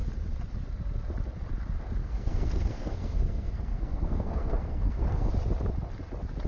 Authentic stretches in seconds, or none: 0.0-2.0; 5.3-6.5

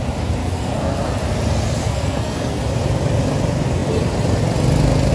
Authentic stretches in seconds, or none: 0.0-0.4; 1.1-1.8; 2.6-5.1

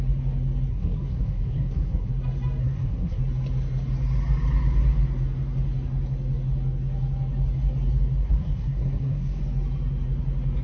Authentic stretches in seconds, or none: 0.0-0.7; 2.1-2.6; 3.2-8.2; 9.4-10.6